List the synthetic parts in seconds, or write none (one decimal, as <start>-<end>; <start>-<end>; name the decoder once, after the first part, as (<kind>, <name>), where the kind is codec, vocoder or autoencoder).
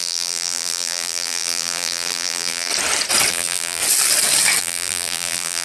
0.0-2.7 (vocoder, BigVGAN v2); 3.3-3.8; 4.6-5.6